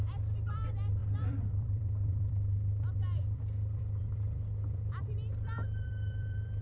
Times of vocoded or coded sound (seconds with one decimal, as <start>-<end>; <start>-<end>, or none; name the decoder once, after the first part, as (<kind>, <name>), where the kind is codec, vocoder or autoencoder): 0.0-6.6 (vocoder, BigVGAN v2)